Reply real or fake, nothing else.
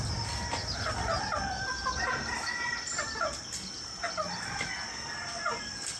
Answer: real